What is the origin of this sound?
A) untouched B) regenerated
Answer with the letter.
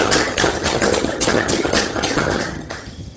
B